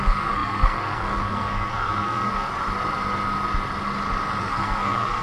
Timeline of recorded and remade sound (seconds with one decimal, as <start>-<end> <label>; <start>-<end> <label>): 0.0-2.5 remade; 2.5-4.4 recorded; 4.4-5.2 remade